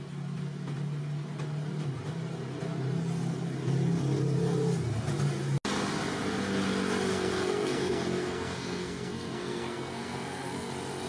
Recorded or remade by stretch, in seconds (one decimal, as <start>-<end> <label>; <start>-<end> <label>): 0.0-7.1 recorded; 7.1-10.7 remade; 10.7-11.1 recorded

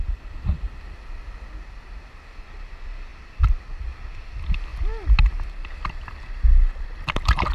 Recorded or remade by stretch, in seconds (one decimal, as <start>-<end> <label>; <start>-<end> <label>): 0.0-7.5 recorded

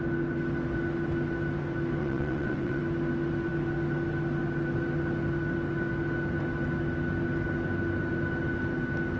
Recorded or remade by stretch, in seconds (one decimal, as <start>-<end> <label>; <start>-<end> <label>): 0.0-2.0 recorded; 2.0-2.8 remade; 2.8-9.2 recorded